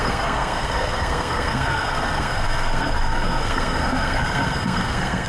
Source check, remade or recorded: remade